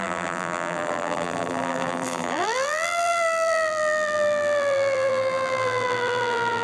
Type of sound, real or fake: fake